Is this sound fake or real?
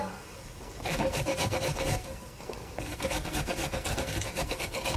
fake